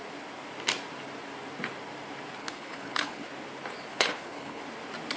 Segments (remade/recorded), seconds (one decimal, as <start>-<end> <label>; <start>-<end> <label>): 0.0-2.4 recorded; 2.4-3.3 remade; 3.3-3.9 recorded; 3.9-4.6 remade; 4.6-5.2 recorded